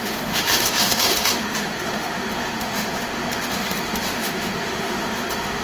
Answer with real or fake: fake